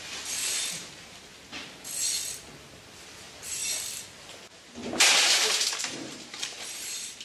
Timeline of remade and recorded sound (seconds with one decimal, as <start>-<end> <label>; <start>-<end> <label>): 0.0-1.3 remade; 1.3-3.2 recorded; 3.2-3.6 remade; 3.6-4.3 recorded; 4.3-4.8 remade; 4.8-5.8 recorded; 5.8-7.2 remade